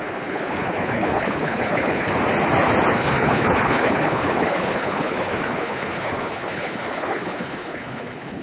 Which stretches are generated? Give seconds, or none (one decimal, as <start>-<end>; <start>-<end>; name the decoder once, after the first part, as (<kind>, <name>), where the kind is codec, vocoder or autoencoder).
0.0-2.1 (codec, HILCodec); 2.9-8.4